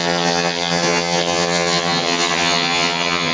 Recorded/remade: remade